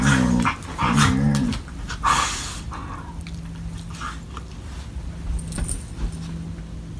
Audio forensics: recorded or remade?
recorded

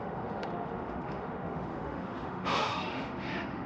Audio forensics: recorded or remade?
remade